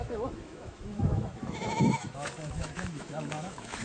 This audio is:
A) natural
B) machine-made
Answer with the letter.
B